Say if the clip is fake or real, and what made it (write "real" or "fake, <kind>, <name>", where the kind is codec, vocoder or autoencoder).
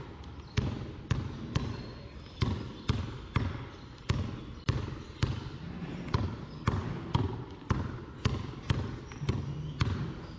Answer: real